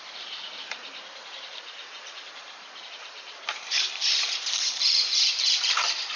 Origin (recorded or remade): remade